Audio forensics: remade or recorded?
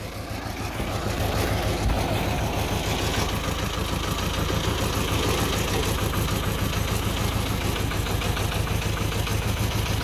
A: recorded